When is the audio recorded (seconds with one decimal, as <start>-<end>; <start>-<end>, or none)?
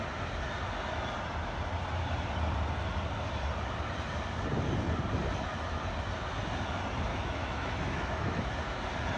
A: 0.0-7.1; 8.5-9.2